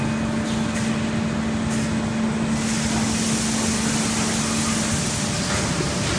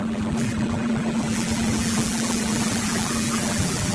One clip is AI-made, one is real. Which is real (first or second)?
first